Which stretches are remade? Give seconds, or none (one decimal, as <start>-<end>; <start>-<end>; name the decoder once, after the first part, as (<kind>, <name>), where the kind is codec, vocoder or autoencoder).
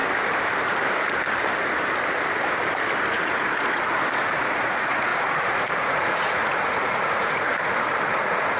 3.1-3.9 (vocoder, Vocos); 4.4-7.5; 8.1-8.6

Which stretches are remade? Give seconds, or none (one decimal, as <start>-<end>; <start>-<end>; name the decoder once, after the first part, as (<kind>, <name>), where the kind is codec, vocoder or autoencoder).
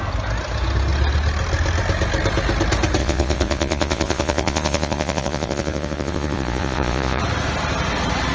3.0-7.2 (vocoder, Vocos)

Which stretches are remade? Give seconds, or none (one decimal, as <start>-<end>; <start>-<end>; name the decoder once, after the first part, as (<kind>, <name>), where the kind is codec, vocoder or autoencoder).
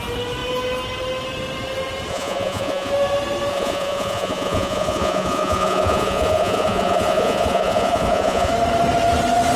2.1-2.9 (vocoder, Vocos); 3.5-8.5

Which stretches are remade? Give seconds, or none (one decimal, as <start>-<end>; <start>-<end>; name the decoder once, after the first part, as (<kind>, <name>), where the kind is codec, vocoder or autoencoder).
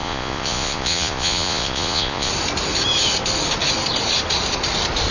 0.0-2.3 (vocoder, Vocos)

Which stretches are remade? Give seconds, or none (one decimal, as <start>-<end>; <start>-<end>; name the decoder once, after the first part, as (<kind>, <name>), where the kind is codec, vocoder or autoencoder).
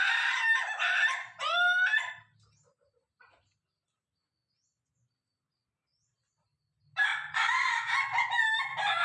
none